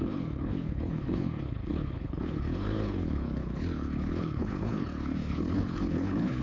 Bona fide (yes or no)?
no